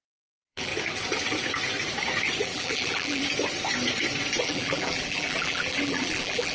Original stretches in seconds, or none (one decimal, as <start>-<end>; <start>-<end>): 0.7-2.4; 3.2-4.4